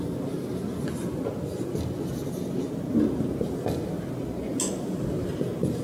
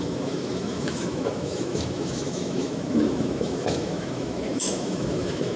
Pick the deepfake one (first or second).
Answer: second